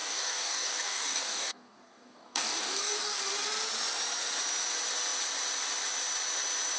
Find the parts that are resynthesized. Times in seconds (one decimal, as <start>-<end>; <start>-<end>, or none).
0.0-3.2